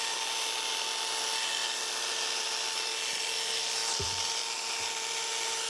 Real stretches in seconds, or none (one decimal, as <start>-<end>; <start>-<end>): 0.0-1.6; 2.8-3.8; 5.3-5.7

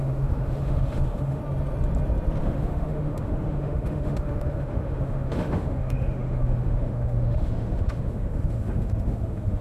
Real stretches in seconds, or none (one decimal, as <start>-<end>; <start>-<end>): 1.4-2.4

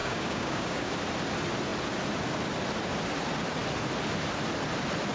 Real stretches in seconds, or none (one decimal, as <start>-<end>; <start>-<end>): 0.9-5.1

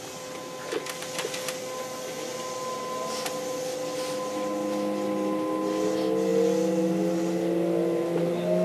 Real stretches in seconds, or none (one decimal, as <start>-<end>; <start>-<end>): 0.0-8.6

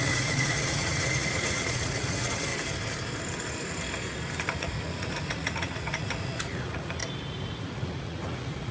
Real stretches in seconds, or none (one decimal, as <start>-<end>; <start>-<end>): 2.5-4.5; 7.0-7.6

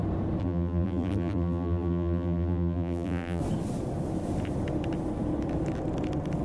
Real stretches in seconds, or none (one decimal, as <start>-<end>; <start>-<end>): 0.0-0.4; 3.4-6.4

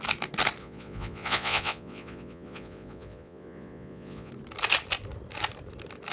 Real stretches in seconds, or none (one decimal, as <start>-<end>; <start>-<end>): 0.0-0.6; 4.3-6.1